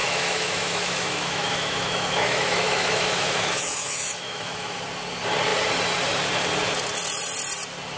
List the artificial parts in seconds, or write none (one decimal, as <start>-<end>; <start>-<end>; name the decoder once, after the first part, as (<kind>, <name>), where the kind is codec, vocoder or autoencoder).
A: 0.0-4.8 (autoencoder, DAC-VAE)